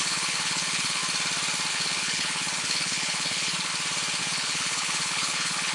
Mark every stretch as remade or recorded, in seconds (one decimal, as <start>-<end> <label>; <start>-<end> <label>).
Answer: 0.0-1.0 remade; 1.0-1.7 recorded; 1.7-3.7 remade; 3.7-4.2 recorded; 4.2-5.7 remade